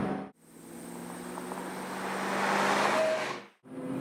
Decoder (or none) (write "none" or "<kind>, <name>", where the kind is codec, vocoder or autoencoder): none